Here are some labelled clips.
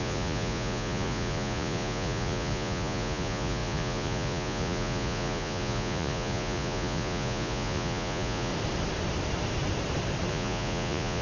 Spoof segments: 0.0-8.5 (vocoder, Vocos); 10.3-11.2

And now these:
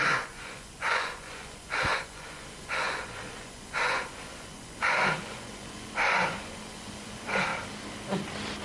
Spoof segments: 0.0-7.5 (vocoder, Vocos)

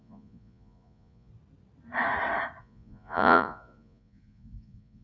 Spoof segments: 0.0-1.3 (vocoder, Vocos); 2.6-5.0